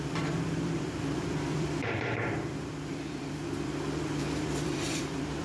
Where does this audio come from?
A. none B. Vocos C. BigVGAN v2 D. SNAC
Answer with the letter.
C